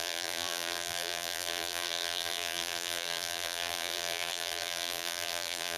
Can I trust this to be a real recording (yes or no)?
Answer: no